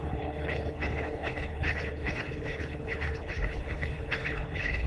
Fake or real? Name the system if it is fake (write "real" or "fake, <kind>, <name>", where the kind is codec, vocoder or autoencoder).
fake, codec, HILCodec